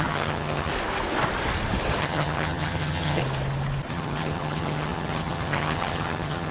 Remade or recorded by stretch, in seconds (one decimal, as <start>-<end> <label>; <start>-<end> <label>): 0.0-0.7 remade; 0.7-2.0 recorded; 2.0-3.2 remade; 3.2-3.9 recorded; 3.9-6.5 remade